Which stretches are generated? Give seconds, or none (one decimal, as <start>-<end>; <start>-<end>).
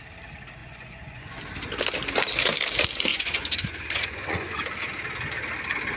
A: 0.6-1.4; 3.1-4.6